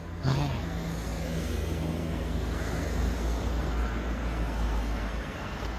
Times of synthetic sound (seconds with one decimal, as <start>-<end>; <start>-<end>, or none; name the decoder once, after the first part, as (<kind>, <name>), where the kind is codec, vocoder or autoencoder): 0.0-5.8 (codec, SNAC)